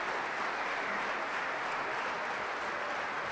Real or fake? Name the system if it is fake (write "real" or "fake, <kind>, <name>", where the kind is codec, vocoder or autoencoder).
real